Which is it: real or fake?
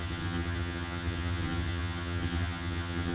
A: fake